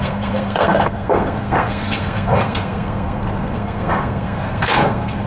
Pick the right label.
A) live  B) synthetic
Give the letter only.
B